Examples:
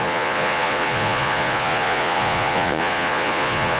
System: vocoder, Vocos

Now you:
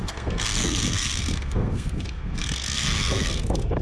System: codec, SNAC